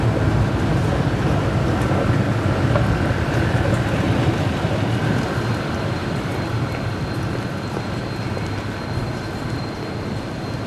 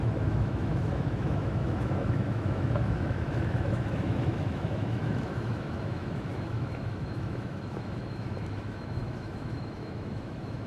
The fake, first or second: second